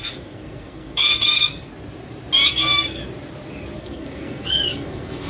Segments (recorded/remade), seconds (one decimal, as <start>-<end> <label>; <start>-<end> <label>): 0.0-1.7 remade; 1.7-2.5 recorded; 2.5-3.0 remade; 3.0-3.8 recorded; 3.8-5.3 remade